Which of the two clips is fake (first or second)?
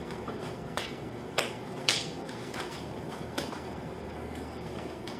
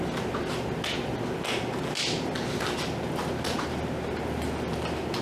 first